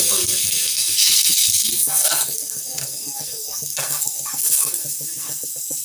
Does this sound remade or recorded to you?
remade